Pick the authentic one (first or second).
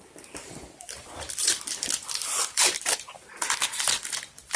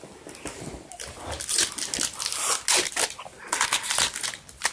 second